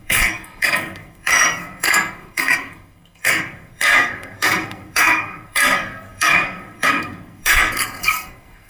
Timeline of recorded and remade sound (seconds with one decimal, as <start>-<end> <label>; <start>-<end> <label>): 0.0-8.7 remade